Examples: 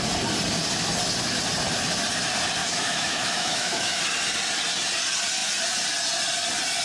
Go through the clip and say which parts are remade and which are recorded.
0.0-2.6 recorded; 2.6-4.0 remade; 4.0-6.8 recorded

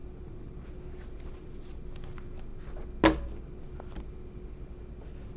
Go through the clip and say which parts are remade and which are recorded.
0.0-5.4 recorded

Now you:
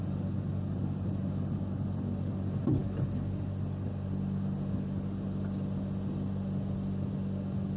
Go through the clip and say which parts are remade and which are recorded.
0.0-7.8 recorded

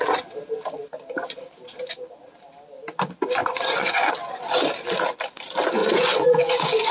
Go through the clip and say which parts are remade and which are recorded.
0.0-3.4 recorded; 3.4-4.1 remade; 4.1-5.8 recorded; 5.8-6.9 remade

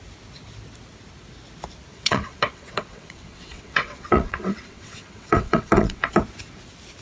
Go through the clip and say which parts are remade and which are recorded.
0.0-1.9 recorded; 1.9-6.1 remade; 6.1-7.0 recorded

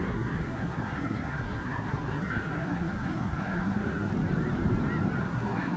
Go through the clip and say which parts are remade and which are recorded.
0.0-4.1 remade; 4.1-5.2 recorded; 5.2-5.8 remade

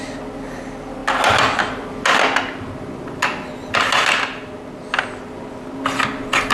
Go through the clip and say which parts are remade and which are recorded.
0.0-6.5 recorded

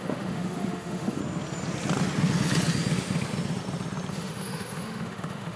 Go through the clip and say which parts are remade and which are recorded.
0.0-1.2 remade; 1.2-4.1 recorded; 4.1-5.6 remade